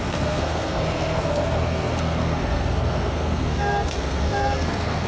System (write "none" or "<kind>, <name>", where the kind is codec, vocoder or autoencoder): codec, SNAC